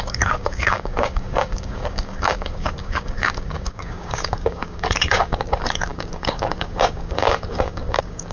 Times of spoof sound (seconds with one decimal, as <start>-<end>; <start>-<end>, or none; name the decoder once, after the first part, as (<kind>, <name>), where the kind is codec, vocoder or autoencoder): 0.0-8.3 (codec, DAC)